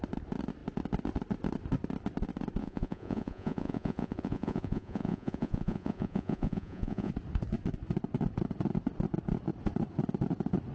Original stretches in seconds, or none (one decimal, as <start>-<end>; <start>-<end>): 0.0-2.6; 7.1-10.7